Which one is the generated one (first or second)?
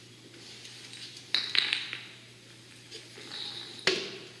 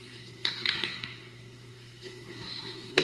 second